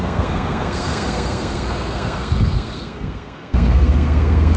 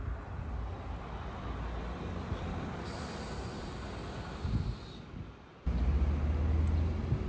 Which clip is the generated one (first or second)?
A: first